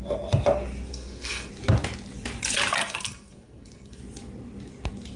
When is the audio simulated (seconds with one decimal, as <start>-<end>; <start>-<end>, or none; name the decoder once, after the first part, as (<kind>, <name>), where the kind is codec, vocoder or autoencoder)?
0.9-1.5 (codec, SNAC); 2.8-4.0

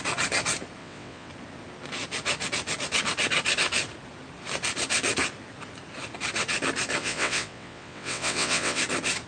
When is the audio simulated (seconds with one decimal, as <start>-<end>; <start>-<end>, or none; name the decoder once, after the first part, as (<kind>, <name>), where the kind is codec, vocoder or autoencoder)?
0.8-1.3 (vocoder, WaveNeXt); 7.0-8.8

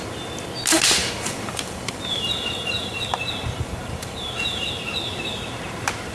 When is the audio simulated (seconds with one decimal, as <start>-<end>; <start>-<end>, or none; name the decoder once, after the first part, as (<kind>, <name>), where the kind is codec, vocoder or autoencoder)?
1.0-4.7 (vocoder, BigVGAN v2)

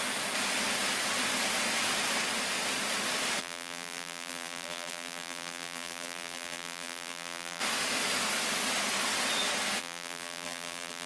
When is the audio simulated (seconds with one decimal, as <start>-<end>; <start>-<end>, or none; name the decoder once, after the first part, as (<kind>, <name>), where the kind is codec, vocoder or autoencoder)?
3.4-7.6 (vocoder, BigVGAN v2); 9.8-11.1

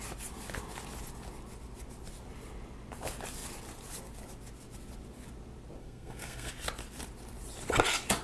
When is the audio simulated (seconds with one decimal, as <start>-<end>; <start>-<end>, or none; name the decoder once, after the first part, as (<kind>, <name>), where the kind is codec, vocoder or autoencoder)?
5.8-6.5 (codec, SNAC)